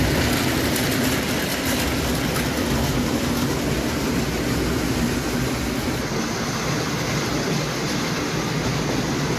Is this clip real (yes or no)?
yes